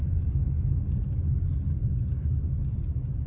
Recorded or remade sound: recorded